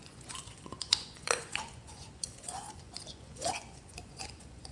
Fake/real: fake